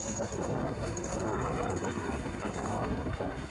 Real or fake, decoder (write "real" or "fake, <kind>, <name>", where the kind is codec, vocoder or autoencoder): fake, codec, SNAC